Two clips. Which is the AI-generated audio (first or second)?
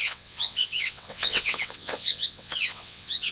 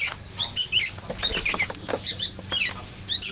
first